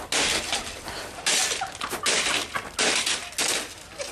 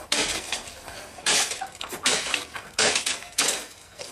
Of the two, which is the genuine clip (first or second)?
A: first